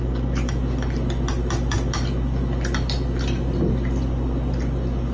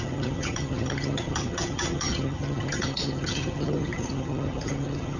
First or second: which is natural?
first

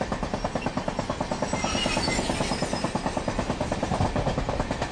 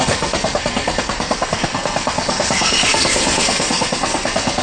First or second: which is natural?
first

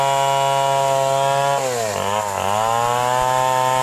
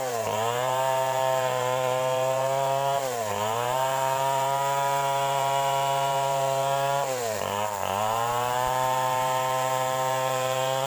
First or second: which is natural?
first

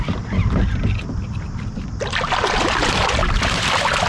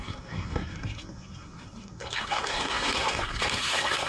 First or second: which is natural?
first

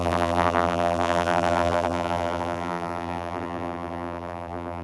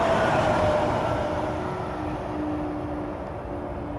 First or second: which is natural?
second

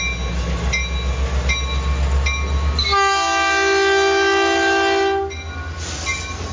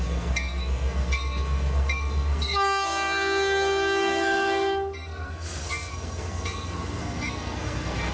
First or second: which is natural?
first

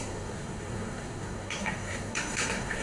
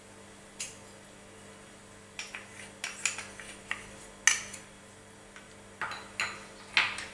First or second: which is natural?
second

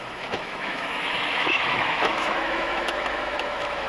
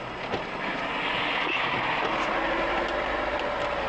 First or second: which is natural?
second